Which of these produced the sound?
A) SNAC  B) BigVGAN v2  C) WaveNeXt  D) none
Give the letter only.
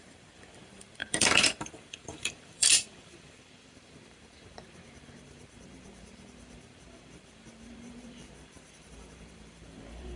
B